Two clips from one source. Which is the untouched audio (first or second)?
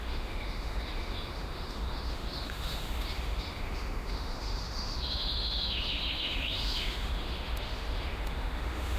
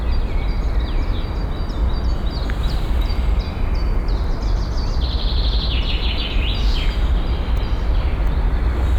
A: second